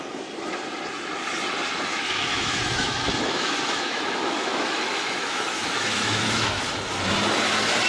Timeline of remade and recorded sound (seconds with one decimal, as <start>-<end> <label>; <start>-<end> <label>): 0.0-1.9 recorded; 1.9-6.6 remade; 6.6-7.9 recorded

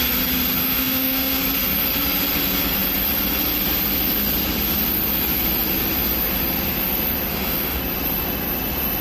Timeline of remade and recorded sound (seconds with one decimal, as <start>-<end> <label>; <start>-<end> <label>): 0.0-0.6 recorded; 0.6-1.4 remade; 1.4-7.3 recorded; 7.3-7.8 remade; 7.8-9.0 recorded

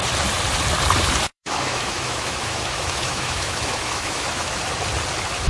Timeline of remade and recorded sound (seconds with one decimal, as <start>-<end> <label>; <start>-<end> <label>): 0.0-1.3 recorded; 1.3-4.6 remade; 4.6-5.5 recorded

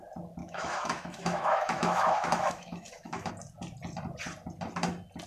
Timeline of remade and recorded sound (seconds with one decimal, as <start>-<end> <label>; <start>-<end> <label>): 0.0-0.4 recorded; 0.4-3.3 remade; 3.3-5.3 recorded